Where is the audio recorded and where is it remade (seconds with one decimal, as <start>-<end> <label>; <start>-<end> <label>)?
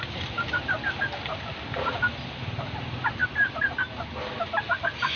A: 0.0-5.2 recorded